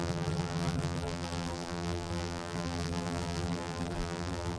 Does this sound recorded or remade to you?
remade